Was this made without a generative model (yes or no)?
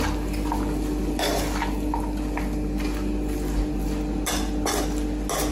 yes